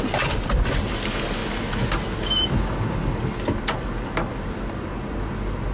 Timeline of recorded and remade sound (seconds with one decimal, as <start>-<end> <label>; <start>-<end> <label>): 0.0-5.7 recorded